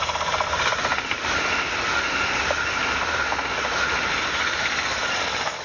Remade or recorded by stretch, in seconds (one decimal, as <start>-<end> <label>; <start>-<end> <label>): 0.0-5.6 recorded

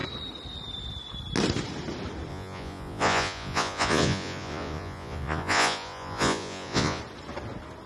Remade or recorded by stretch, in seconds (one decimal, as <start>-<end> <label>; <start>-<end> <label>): 0.0-2.3 recorded; 2.3-7.0 remade; 7.0-7.9 recorded

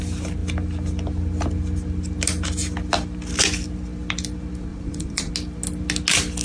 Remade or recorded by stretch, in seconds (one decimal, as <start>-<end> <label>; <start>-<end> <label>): 0.0-4.7 recorded; 4.7-5.3 remade; 5.3-6.4 recorded

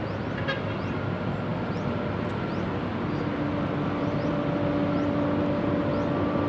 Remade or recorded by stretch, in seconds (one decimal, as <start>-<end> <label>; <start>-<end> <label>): 0.0-6.5 recorded

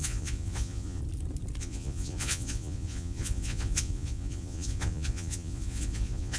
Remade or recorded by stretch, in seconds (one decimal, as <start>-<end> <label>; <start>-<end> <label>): 0.0-1.0 remade; 1.0-1.6 recorded; 1.6-6.4 remade

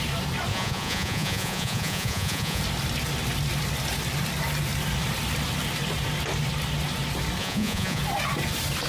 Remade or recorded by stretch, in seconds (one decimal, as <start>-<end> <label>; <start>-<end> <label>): 0.0-0.5 recorded; 0.5-2.6 remade; 2.6-7.4 recorded; 7.4-8.0 remade; 8.0-8.9 recorded